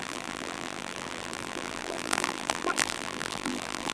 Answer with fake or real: fake